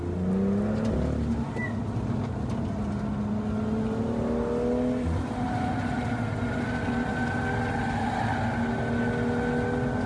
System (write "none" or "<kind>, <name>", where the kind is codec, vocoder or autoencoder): none